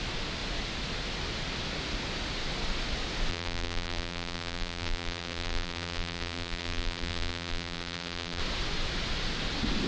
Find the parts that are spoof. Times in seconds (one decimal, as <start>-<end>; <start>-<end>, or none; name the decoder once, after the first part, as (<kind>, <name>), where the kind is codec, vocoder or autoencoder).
3.3-8.4 (vocoder, BigVGAN v2)